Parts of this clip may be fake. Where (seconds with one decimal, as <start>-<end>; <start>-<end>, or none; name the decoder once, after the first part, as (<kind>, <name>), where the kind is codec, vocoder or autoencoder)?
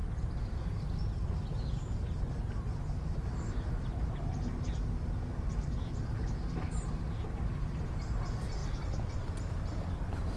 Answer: none